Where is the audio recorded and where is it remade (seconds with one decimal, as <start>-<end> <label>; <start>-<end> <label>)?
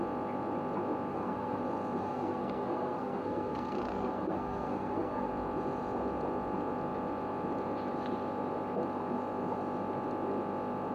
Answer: 0.0-1.1 recorded; 1.1-1.6 remade; 1.6-2.0 recorded; 2.0-5.3 remade; 5.3-10.9 recorded